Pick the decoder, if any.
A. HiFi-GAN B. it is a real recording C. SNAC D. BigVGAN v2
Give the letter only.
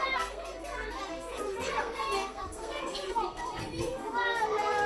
C